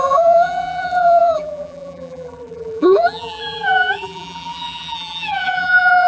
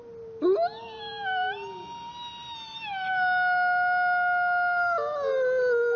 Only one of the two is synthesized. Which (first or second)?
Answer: first